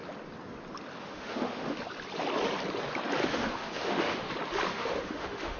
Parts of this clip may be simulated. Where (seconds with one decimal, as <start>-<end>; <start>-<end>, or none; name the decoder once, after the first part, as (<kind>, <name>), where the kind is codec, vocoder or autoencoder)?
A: 1.0-1.8 (autoencoder, DAC-VAE); 3.2-4.3; 4.7-5.6